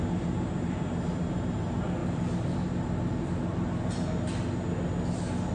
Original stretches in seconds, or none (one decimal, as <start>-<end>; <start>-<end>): 2.0-5.5

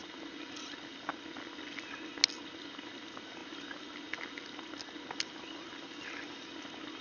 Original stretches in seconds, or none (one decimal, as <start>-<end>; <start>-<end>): 0.0-7.0

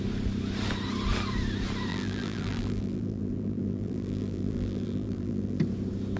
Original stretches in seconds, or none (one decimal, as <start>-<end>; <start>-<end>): 0.0-1.9; 5.6-6.2

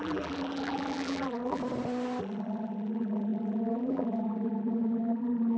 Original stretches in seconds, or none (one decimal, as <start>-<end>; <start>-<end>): 1.6-2.2

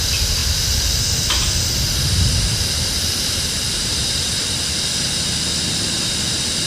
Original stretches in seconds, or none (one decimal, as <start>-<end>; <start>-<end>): 0.0-6.7

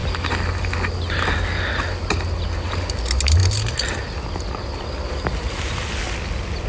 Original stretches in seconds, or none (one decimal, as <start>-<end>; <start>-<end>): 0.0-6.7

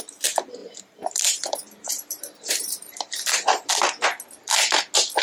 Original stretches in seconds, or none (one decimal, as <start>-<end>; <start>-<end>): 0.0-0.6; 3.7-5.2

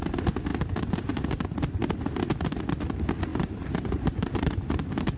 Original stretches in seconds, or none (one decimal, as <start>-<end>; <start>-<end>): 0.0-3.3